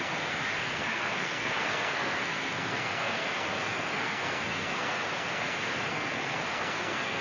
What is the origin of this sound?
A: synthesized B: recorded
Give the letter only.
A